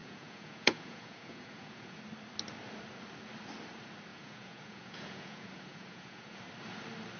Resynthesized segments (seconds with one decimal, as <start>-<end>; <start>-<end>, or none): 0.0-2.0; 4.1-6.4